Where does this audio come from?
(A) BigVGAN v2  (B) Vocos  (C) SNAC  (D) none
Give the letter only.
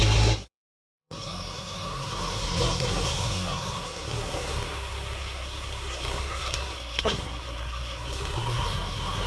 C